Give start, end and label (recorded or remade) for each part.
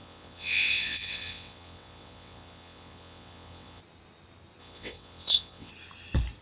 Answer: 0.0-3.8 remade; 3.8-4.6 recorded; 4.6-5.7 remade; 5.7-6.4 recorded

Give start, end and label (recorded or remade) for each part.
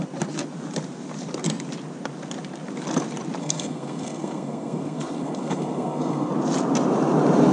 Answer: 0.0-3.4 recorded; 3.4-6.3 remade; 6.3-7.5 recorded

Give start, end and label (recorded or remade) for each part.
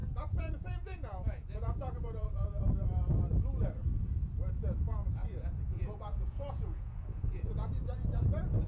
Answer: 0.0-2.6 remade; 2.6-5.2 recorded; 5.2-7.7 remade; 7.7-8.7 recorded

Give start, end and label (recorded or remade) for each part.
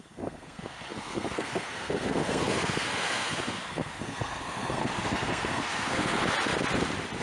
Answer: 0.0-6.2 remade; 6.2-7.2 recorded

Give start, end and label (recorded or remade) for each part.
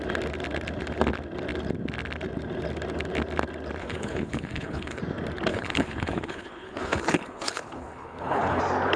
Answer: 0.0-3.8 recorded; 3.8-5.0 remade; 5.0-5.5 recorded; 5.5-8.6 remade; 8.6-9.0 recorded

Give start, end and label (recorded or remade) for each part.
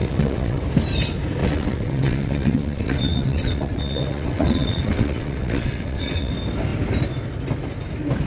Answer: 0.0-0.6 remade; 0.6-1.4 recorded; 1.4-6.3 remade; 6.3-8.3 recorded